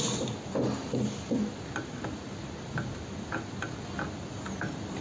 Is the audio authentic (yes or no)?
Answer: yes